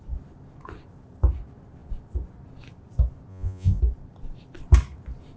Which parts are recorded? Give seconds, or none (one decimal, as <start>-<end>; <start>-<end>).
0.0-3.3; 3.8-5.4